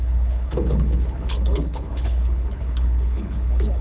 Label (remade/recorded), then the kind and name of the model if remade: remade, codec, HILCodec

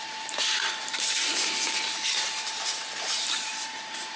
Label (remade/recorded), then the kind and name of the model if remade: remade, vocoder, BigVGAN v2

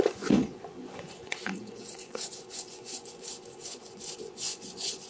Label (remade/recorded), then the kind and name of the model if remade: remade, vocoder, Vocos